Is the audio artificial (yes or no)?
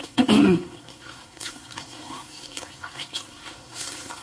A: yes